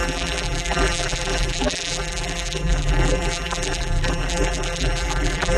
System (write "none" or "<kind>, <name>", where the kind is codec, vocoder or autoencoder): vocoder, BigVGAN v2